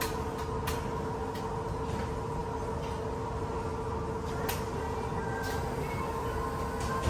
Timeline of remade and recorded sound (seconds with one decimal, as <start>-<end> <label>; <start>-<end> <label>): 0.0-7.1 recorded